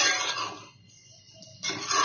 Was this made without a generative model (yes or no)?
yes